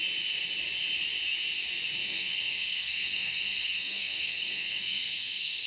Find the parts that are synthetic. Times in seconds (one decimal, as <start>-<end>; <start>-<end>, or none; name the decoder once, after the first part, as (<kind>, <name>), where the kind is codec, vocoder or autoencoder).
2.0-5.7 (codec, SNAC)